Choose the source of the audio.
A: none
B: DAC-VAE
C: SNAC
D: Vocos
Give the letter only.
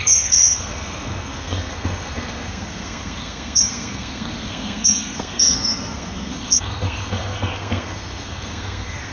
C